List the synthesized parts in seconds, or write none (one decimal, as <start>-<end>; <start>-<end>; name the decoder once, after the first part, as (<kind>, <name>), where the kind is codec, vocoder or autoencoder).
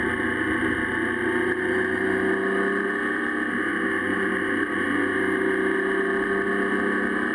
none